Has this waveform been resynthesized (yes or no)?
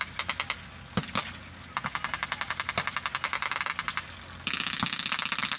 no